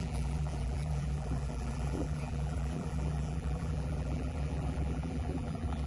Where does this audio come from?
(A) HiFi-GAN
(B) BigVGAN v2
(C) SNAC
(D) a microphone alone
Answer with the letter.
B